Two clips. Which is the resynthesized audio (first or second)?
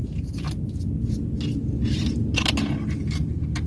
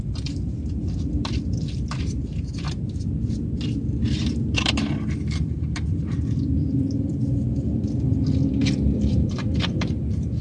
second